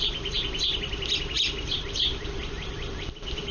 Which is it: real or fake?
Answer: fake